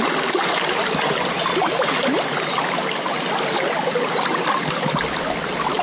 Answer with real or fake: real